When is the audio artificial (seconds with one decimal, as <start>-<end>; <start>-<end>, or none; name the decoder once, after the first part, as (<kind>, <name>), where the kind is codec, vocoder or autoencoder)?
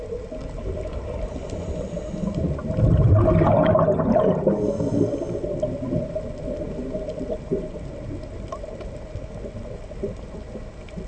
none